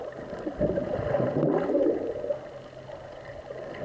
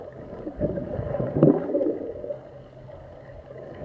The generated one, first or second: second